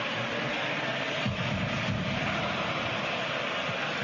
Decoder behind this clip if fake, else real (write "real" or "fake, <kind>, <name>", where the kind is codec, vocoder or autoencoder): real